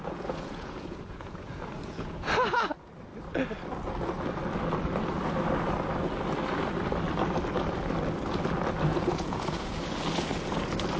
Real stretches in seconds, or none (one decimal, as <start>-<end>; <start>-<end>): 2.3-8.9; 9.9-11.0